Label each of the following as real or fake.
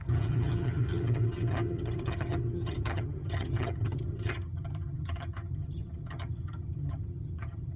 fake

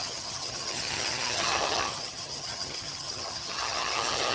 fake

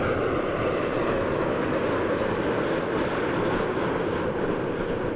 real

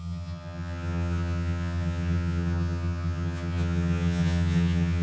fake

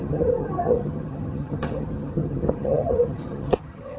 fake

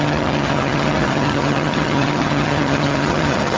fake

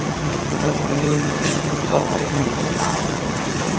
fake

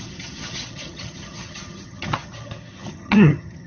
fake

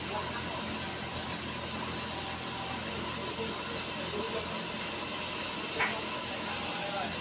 real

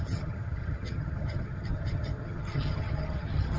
fake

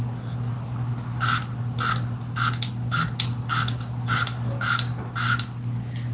real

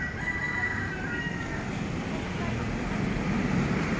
real